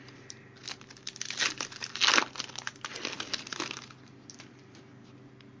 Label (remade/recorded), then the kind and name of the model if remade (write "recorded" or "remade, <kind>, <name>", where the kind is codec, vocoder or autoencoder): recorded